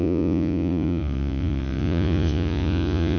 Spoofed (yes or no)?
yes